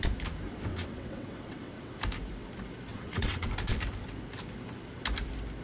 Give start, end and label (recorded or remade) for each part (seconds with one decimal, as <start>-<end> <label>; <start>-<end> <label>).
0.0-0.7 recorded; 0.7-1.9 remade; 1.9-2.9 recorded; 2.9-3.5 remade; 3.5-5.6 recorded